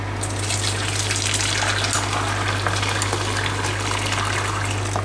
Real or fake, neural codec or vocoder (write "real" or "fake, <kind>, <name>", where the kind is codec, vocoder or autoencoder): real